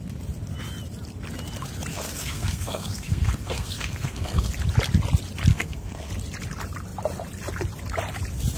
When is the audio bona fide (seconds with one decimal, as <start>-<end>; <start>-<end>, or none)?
0.0-1.9; 4.5-5.5; 6.1-8.6